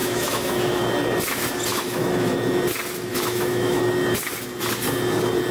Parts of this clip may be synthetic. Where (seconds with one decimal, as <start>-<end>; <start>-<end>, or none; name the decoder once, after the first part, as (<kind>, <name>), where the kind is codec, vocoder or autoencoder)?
0.0-0.8 (autoencoder, DAC-VAE); 1.7-2.4; 3.1-3.8